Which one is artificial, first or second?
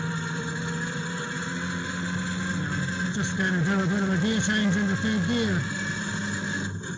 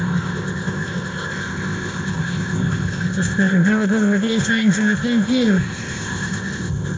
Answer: second